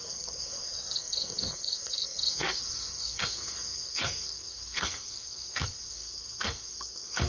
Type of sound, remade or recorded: remade